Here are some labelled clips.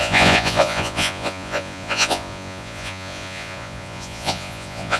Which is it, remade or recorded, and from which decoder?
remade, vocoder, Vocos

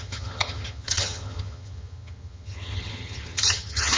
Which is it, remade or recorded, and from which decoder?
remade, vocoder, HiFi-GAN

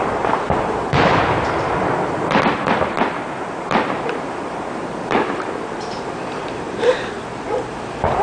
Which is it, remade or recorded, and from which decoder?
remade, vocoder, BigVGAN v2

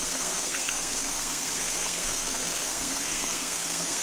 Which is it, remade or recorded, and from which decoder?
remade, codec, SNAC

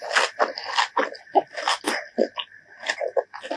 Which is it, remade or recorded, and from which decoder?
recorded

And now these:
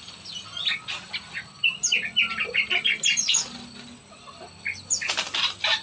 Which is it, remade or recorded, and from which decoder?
recorded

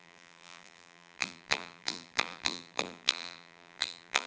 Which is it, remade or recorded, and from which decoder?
remade, vocoder, BigVGAN v2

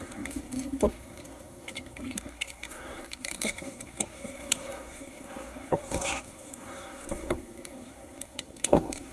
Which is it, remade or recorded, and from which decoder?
remade, codec, SNAC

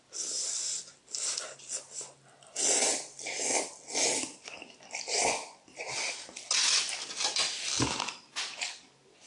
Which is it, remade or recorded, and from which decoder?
recorded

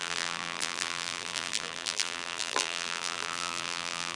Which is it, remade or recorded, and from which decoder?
remade, vocoder, BigVGAN v2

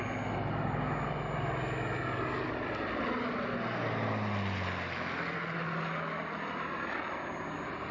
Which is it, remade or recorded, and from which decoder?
recorded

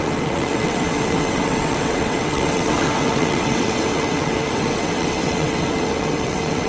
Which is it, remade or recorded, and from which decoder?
remade, vocoder, WaveNeXt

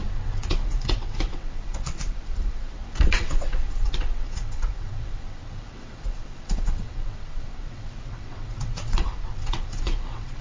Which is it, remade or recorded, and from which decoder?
remade, vocoder, WaveNeXt